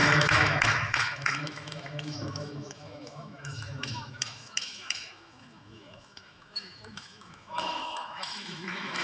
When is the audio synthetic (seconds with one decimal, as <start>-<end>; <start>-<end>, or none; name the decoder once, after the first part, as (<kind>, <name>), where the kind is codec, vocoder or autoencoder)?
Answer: 0.0-9.0 (autoencoder, DAC-VAE)